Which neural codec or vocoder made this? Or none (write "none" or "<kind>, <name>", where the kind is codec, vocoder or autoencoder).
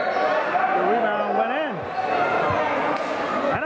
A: none